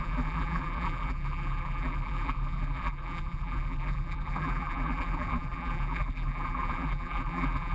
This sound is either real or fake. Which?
fake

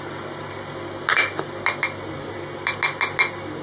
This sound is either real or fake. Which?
real